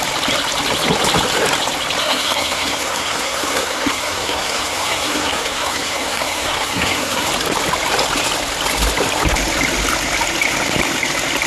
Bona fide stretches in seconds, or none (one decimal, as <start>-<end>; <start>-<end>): 0.0-2.0; 7.3-11.5